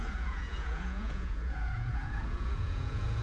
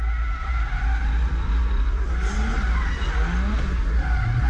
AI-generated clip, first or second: first